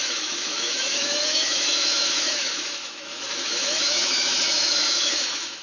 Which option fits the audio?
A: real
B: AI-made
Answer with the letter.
B